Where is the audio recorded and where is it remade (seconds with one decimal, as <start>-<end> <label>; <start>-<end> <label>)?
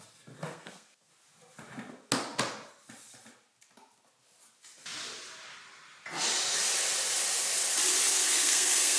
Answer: 0.0-0.5 recorded; 0.5-1.1 remade; 1.1-8.1 recorded; 8.1-9.0 remade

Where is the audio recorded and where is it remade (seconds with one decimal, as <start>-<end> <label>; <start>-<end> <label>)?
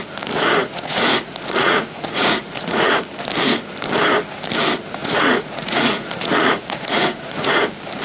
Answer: 0.0-0.6 recorded; 0.6-3.0 remade; 3.0-5.0 recorded; 5.0-7.5 remade; 7.5-8.0 recorded